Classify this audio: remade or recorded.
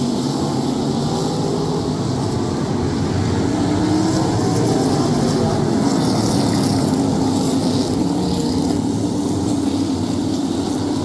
recorded